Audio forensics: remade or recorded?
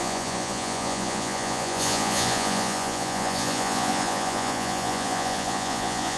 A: remade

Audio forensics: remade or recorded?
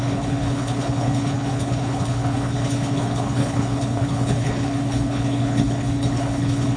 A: remade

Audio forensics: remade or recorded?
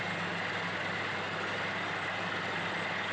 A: recorded